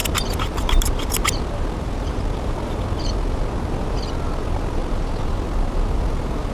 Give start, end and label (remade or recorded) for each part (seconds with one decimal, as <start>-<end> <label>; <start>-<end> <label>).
0.0-3.9 remade; 3.9-4.8 recorded; 4.8-6.0 remade; 6.0-6.5 recorded